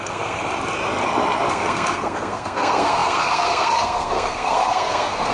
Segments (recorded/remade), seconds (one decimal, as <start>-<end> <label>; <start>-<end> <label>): 0.0-0.4 remade; 0.4-1.5 recorded; 1.5-5.3 remade